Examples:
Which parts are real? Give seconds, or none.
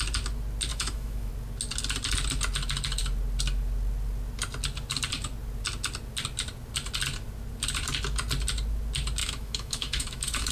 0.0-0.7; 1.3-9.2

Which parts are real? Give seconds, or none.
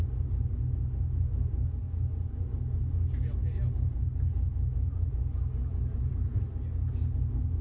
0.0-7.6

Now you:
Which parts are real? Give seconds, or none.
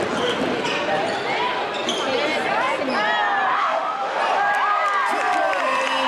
0.0-3.5; 4.2-6.1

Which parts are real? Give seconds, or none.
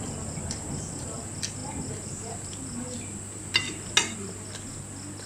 0.0-5.3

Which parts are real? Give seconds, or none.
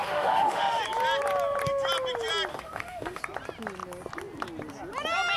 0.8-2.5; 3.2-5.4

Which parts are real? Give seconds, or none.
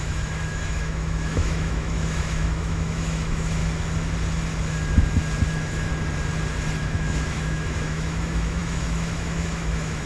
3.6-5.5; 5.9-6.8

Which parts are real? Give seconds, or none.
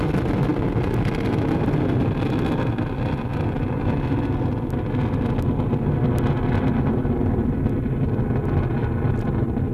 0.0-9.7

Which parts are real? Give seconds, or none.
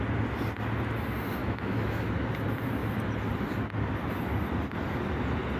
0.0-1.4; 2.1-5.6